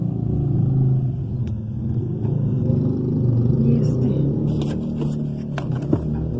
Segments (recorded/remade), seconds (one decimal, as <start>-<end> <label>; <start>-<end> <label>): 0.0-1.4 recorded; 1.4-2.7 remade; 2.7-6.4 recorded